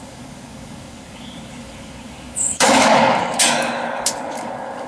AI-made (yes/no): yes